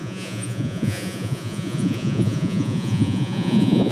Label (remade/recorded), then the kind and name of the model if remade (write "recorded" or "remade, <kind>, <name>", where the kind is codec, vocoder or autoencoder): remade, vocoder, Vocos